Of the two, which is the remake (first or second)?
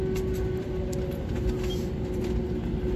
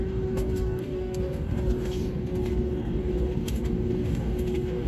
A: second